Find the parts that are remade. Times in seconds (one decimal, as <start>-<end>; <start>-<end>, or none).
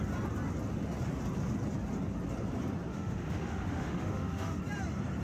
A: 2.9-4.6